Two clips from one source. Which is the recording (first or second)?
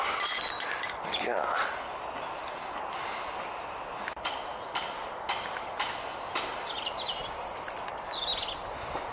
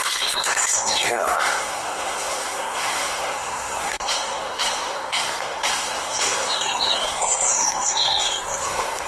first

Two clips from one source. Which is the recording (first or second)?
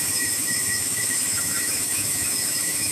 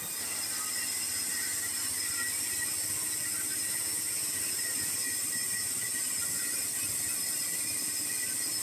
second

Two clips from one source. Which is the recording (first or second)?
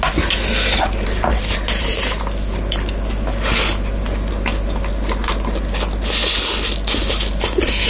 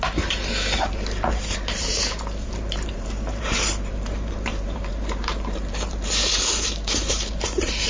first